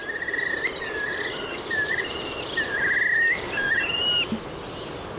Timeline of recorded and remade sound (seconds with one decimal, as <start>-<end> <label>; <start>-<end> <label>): 0.0-5.2 recorded